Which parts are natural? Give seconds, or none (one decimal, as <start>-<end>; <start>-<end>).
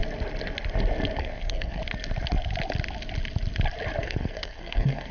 0.0-1.2; 1.8-4.0